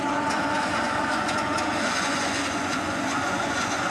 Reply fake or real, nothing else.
fake